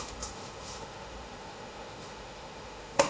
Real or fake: fake